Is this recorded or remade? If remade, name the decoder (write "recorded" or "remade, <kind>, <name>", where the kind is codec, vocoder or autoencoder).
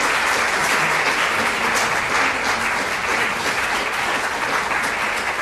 recorded